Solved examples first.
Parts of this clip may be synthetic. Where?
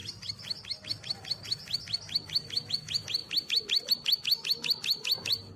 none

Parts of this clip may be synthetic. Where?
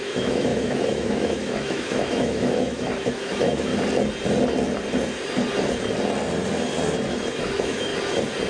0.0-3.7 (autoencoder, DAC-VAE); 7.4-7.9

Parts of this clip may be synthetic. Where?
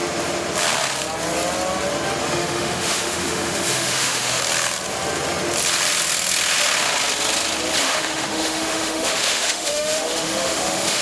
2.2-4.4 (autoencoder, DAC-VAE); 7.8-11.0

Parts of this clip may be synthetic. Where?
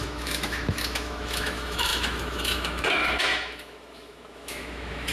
0.0-5.1 (autoencoder, DAC-VAE)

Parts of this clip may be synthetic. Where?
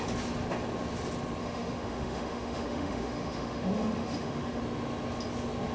1.4-4.6 (autoencoder, DAC-VAE)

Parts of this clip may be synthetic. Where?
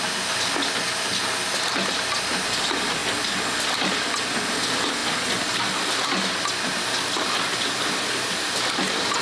none